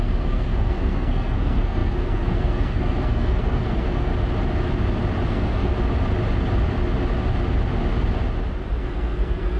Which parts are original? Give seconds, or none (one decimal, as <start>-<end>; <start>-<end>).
4.1-5.3; 5.7-8.8